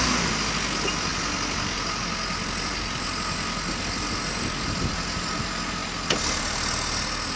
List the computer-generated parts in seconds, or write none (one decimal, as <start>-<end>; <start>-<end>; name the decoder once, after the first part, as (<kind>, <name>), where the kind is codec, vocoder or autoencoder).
none